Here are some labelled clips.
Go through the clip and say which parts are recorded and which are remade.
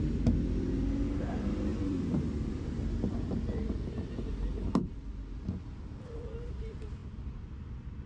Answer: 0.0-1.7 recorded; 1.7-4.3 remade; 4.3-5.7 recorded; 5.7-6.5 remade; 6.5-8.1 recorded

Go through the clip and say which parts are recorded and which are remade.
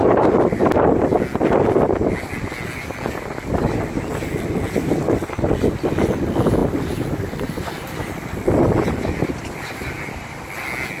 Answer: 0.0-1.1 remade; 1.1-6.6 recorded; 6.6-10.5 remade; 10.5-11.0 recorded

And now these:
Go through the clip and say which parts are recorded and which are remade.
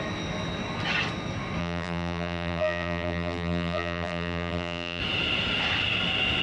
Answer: 0.0-1.6 recorded; 1.6-5.0 remade; 5.0-6.4 recorded